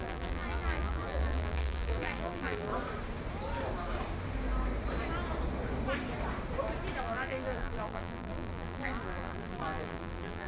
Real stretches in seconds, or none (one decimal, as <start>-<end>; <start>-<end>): 2.7-7.0